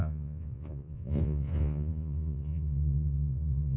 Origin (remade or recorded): remade